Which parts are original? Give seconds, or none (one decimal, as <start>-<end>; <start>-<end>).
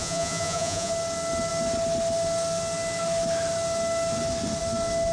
0.9-5.1